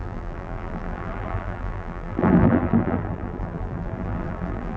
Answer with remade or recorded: remade